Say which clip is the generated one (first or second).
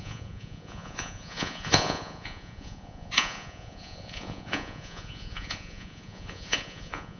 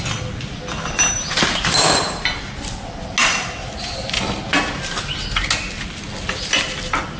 first